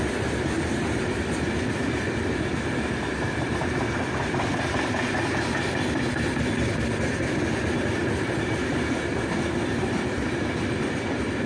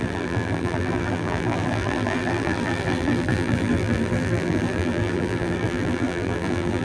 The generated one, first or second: second